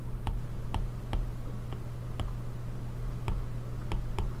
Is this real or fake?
real